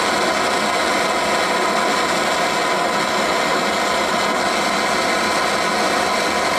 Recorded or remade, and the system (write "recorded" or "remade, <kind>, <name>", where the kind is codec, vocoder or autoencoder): recorded